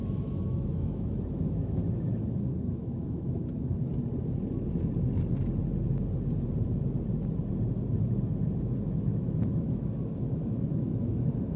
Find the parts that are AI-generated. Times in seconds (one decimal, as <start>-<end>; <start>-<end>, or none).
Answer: 0.0-3.9; 8.0-11.6